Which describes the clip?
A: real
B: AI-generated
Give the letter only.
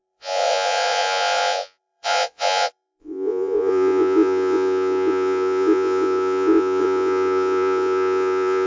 B